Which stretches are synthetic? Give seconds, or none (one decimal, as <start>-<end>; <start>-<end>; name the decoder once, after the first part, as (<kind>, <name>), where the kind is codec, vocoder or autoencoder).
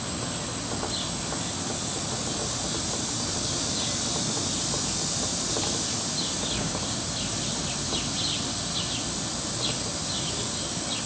none